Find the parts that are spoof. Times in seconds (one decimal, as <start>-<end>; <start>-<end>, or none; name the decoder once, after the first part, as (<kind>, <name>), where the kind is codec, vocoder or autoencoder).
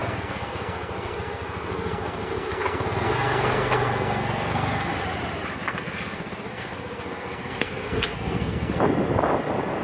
0.0-4.9 (codec, SNAC); 5.7-8.8